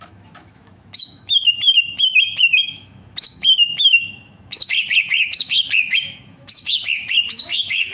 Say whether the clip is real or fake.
fake